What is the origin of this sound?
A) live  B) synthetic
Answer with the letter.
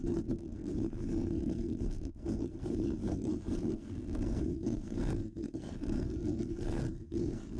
B